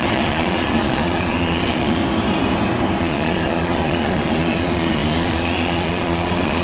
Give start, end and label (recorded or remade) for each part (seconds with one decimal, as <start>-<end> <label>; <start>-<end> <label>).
0.0-2.0 remade; 2.0-3.0 recorded; 3.0-6.6 remade